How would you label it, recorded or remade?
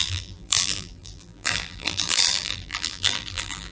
remade